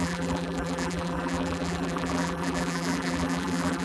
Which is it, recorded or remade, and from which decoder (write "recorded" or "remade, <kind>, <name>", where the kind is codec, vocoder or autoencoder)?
remade, vocoder, BigVGAN v2